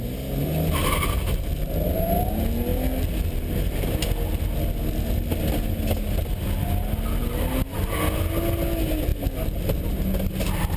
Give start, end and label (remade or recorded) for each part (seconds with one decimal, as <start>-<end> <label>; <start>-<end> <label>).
0.0-10.8 recorded